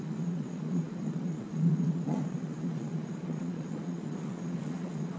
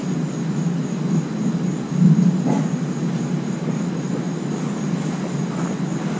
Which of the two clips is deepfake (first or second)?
first